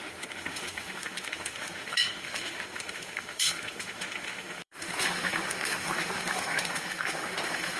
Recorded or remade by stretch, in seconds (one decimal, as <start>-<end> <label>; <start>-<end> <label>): 0.0-7.8 remade